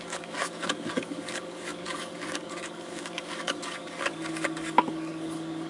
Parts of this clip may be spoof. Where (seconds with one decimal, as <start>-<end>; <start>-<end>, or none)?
0.0-5.7